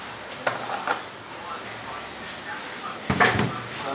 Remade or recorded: recorded